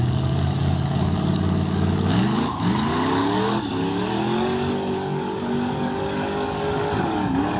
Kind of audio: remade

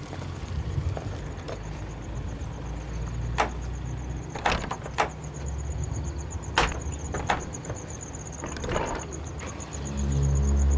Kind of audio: recorded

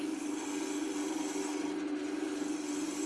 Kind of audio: recorded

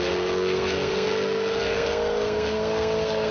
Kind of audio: remade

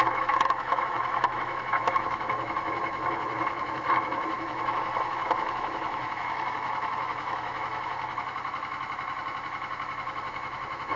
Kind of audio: remade